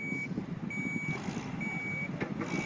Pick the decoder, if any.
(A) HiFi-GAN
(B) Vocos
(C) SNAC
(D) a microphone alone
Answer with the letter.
D